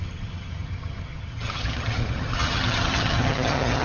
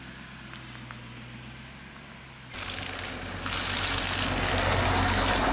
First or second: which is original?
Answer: second